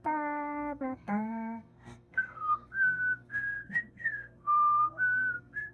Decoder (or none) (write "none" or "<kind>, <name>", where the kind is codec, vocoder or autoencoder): codec, SNAC